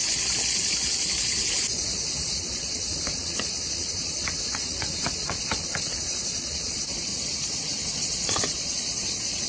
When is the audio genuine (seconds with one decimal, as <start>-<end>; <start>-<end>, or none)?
0.0-2.4; 7.1-8.0